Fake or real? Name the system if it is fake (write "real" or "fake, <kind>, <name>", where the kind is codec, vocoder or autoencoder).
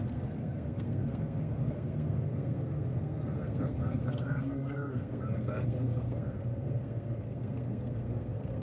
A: fake, codec, SNAC